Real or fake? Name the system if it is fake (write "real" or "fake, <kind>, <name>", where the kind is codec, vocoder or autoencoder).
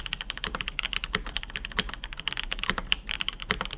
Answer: real